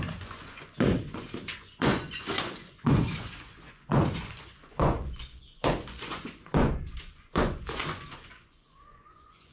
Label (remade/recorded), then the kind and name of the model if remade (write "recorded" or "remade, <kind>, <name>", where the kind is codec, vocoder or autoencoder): remade, vocoder, Vocos